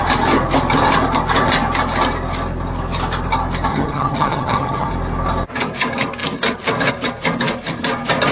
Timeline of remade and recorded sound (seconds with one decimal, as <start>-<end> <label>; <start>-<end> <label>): 0.0-3.7 recorded; 3.7-4.9 remade; 4.9-8.3 recorded